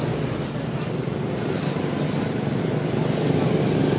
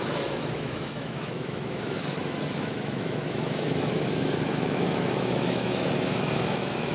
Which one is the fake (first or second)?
second